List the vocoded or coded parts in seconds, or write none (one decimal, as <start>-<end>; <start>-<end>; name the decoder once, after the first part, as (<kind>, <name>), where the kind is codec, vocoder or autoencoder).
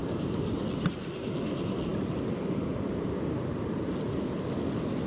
0.0-0.5 (vocoder, BigVGAN v2)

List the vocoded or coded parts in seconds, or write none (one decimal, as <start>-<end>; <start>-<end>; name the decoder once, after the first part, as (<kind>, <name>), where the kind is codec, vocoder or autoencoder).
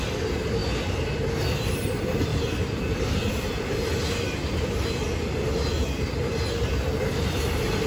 none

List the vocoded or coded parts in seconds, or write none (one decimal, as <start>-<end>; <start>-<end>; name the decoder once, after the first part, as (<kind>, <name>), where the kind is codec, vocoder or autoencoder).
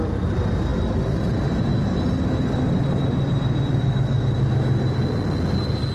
none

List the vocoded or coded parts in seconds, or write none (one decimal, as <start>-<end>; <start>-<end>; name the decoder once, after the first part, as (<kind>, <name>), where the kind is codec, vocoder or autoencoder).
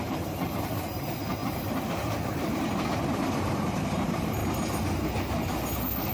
0.0-4.4 (vocoder, BigVGAN v2)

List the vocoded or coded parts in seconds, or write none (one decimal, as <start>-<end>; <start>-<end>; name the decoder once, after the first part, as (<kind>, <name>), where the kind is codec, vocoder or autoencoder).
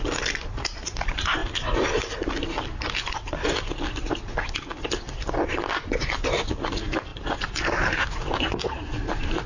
0.0-1.4 (vocoder, BigVGAN v2); 6.5-9.5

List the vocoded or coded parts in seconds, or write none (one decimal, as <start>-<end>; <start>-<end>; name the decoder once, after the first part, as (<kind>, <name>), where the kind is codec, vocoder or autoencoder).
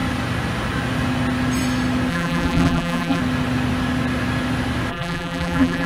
2.1-3.2 (vocoder, BigVGAN v2); 4.9-5.9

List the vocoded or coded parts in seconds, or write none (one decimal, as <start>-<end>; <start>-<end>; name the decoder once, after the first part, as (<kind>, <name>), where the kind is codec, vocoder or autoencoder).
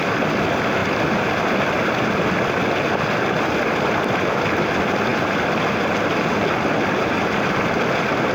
none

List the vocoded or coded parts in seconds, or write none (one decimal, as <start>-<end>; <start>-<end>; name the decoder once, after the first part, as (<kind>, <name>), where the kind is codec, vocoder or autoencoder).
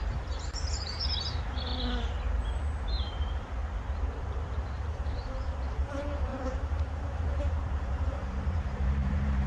0.0-1.7 (vocoder, BigVGAN v2); 2.8-3.6; 4.2-9.5